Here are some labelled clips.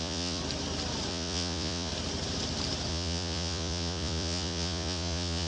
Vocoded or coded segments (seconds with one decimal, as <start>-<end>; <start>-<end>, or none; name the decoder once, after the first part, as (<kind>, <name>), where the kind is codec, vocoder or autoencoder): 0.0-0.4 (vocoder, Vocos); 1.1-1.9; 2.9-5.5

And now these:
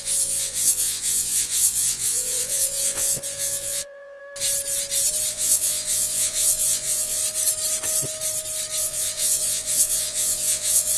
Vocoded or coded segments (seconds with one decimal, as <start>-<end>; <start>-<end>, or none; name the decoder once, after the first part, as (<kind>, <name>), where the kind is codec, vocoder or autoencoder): 0.0-4.2 (vocoder, Vocos); 5.3-7.2; 8.8-11.0

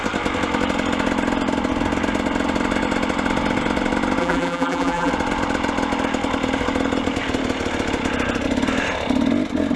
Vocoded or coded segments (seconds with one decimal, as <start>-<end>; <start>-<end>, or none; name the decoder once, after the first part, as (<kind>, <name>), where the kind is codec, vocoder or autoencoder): 4.2-5.1 (vocoder, BigVGAN v2)